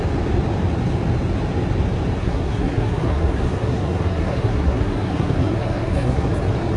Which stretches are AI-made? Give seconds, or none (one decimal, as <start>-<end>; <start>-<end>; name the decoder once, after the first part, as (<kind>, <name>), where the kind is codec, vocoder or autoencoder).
2.2-6.3 (codec, SNAC)